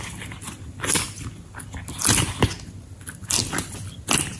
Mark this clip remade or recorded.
remade